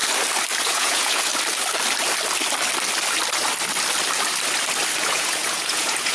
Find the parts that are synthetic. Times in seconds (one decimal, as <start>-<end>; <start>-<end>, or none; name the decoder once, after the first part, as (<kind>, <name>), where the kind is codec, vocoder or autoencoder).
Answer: 0.6-1.3 (vocoder, Vocos); 5.0-6.1